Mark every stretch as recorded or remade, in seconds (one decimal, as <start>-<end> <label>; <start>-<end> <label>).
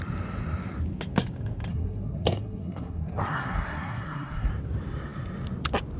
0.0-1.7 recorded; 1.7-4.5 remade; 4.5-6.0 recorded